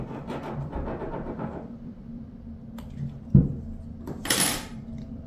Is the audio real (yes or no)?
no